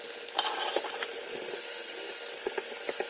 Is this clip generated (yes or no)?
no